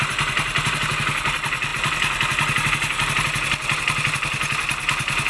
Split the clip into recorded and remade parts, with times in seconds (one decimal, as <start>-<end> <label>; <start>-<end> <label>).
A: 0.0-5.3 recorded